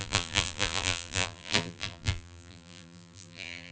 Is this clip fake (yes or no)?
yes